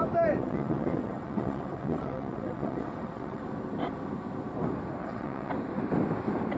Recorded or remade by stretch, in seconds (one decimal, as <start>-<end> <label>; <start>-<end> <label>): 0.0-0.4 recorded; 0.4-3.4 remade; 3.4-5.0 recorded; 5.0-5.5 remade; 5.5-6.6 recorded